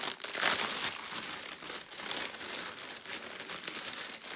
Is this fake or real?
real